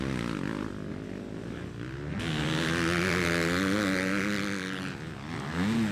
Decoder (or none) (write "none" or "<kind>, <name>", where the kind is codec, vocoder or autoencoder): none